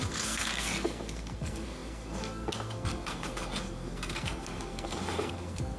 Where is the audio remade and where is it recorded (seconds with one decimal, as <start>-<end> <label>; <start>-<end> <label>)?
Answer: 0.0-5.8 remade